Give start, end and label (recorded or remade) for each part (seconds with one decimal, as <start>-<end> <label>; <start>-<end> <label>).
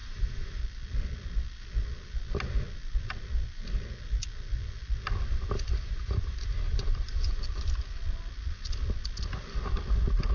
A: 0.0-0.6 remade; 0.6-5.3 recorded; 5.3-7.4 remade; 7.4-10.3 recorded